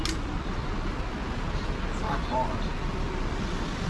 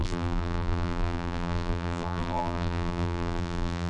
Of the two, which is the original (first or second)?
first